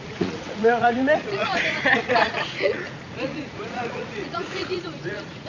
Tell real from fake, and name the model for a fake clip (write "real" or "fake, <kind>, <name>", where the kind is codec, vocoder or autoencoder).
fake, vocoder, Vocos